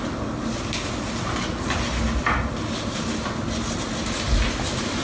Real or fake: real